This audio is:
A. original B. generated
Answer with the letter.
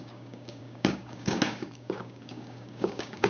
B